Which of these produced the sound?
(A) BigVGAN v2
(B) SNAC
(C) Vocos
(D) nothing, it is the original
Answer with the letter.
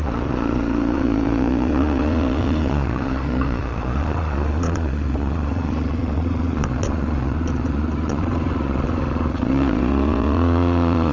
C